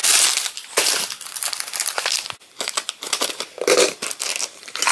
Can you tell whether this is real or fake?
fake